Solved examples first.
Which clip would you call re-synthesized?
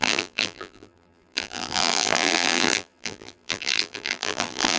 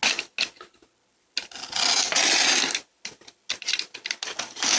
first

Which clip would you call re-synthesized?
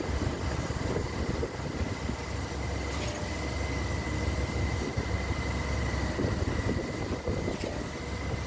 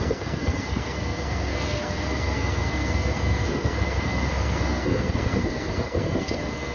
second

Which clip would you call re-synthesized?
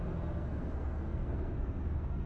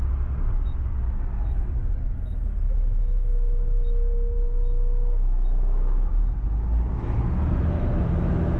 first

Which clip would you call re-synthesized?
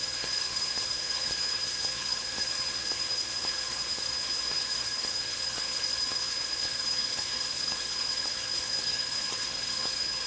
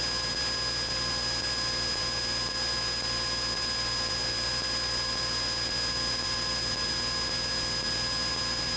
first